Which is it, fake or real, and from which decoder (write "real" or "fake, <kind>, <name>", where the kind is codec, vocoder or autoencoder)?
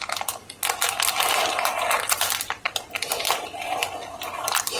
real